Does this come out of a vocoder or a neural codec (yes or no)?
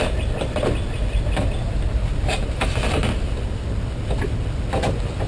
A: no